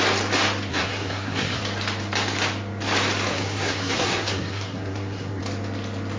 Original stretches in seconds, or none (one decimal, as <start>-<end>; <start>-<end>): 0.0-0.7; 1.6-3.3; 5.4-6.2